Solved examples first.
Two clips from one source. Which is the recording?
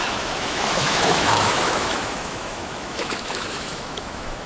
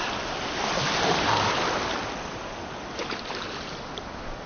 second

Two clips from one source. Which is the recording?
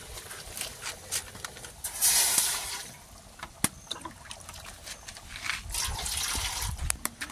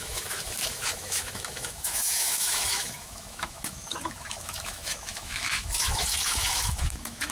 first